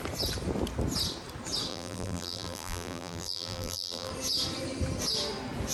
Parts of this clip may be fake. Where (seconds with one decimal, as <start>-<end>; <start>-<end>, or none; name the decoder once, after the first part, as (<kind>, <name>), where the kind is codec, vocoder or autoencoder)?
1.7-4.1 (vocoder, BigVGAN v2)